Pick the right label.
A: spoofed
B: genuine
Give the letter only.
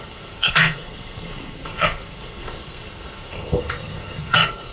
A